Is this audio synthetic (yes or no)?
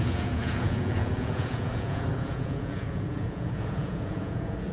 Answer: yes